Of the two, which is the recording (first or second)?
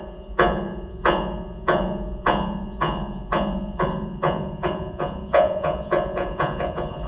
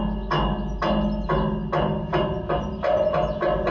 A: second